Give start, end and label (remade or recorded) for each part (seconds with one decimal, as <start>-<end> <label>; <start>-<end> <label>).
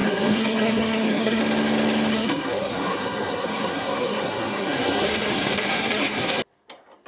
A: 0.0-1.4 remade; 1.4-2.1 recorded; 2.1-6.4 remade; 6.4-7.1 recorded